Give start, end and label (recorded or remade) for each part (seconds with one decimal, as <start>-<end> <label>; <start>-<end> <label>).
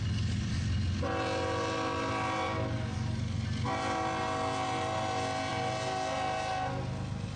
0.0-7.4 recorded